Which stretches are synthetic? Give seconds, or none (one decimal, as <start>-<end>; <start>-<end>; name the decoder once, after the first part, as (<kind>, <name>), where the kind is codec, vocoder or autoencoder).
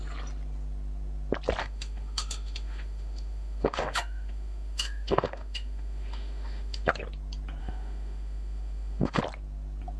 1.6-6.9 (autoencoder, DAC-VAE); 7.6-9.2